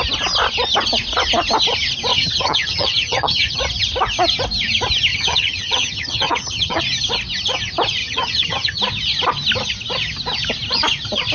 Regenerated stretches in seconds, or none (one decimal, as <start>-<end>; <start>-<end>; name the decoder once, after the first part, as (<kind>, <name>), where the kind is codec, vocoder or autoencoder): 2.1-3.6 (vocoder, HiFi-GAN); 5.1-6.8; 8.0-8.8